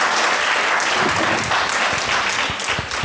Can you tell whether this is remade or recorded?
recorded